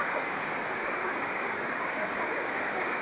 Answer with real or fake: fake